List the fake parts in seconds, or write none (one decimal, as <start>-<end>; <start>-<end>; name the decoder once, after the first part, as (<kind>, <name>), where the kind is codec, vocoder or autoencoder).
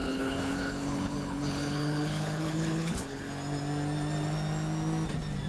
0.0-3.3 (codec, HILCodec)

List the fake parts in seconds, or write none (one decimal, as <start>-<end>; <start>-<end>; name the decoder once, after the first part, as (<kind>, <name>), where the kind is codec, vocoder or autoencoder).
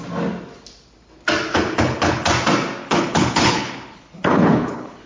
1.5-2.3 (codec, HILCodec); 2.8-5.1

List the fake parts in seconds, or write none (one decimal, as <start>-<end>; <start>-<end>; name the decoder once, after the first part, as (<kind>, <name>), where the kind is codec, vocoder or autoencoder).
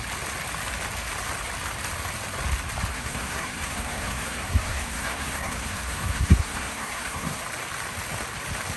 2.9-7.4 (codec, SNAC)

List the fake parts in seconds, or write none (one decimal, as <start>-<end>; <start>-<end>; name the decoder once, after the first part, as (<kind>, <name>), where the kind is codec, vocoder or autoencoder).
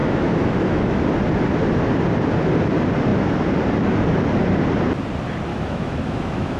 0.0-1.0 (autoencoder, DAC-VAE); 5.5-6.6